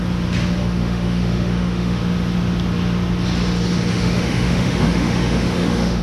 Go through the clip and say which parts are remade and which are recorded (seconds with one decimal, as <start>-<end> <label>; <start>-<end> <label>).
0.0-0.6 recorded; 0.6-2.0 remade; 2.0-3.9 recorded; 3.9-6.0 remade